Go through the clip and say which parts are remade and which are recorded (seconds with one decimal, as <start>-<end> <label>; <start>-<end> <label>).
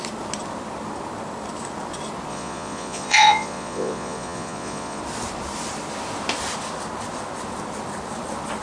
0.0-2.3 recorded; 2.3-5.0 remade; 5.0-8.6 recorded